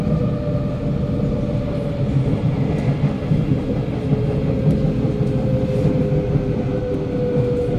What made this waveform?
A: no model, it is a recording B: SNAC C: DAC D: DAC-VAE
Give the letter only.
A